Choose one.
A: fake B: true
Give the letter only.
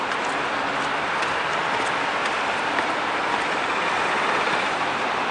A